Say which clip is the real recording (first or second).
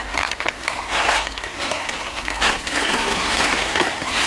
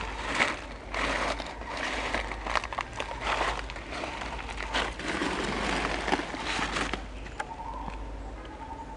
second